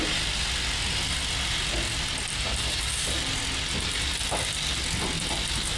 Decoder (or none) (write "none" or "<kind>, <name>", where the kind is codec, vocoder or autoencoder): none